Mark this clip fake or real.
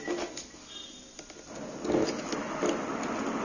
real